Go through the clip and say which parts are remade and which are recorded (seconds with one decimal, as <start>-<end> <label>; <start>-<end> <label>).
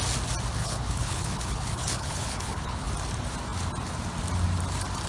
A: 0.0-0.6 recorded; 0.6-2.9 remade; 2.9-5.1 recorded